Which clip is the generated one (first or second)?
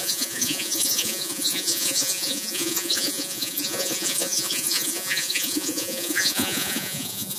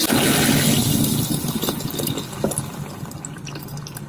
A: first